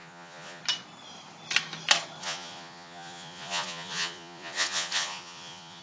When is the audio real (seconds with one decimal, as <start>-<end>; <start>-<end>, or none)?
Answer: 0.6-2.2